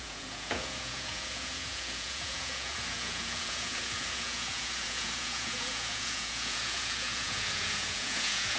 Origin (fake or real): fake